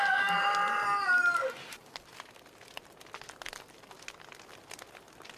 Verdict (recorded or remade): recorded